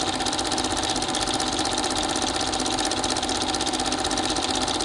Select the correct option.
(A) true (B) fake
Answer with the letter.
A